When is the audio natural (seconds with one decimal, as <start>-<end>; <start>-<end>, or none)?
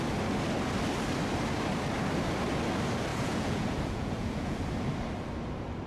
0.0-3.1; 4.6-5.9